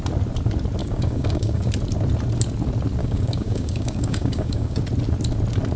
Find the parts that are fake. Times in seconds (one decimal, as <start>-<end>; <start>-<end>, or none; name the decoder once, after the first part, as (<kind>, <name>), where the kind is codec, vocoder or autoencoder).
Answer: 0.8-1.7 (codec, DAC); 3.0-4.8